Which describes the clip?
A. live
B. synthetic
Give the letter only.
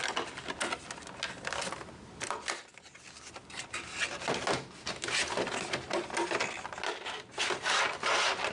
A